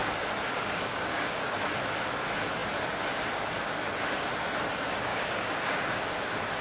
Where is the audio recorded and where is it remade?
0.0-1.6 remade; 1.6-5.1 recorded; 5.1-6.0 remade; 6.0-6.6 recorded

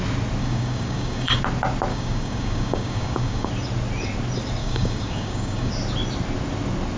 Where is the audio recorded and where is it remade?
0.0-0.4 recorded; 0.4-1.4 remade; 1.4-1.9 recorded; 1.9-3.5 remade; 3.5-4.6 recorded; 4.6-5.7 remade; 5.7-7.0 recorded

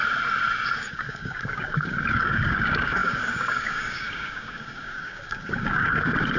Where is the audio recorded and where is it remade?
0.0-0.9 recorded; 0.9-6.4 remade